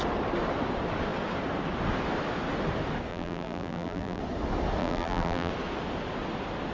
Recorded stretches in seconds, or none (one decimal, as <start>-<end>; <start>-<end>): 0.0-3.1; 4.2-4.8; 5.5-6.7